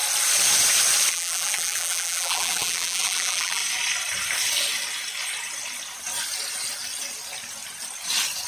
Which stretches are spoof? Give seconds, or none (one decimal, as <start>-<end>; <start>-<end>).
1.1-3.6